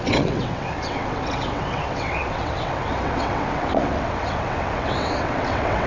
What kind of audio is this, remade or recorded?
remade